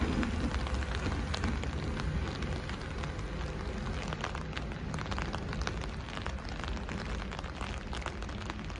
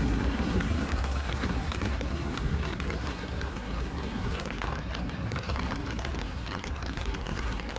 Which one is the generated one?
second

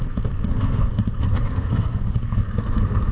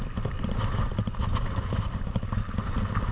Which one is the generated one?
first